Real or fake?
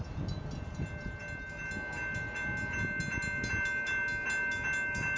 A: real